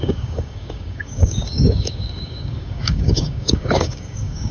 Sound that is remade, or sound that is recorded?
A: remade